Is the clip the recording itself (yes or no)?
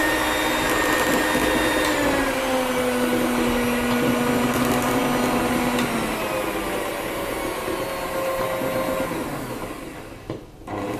yes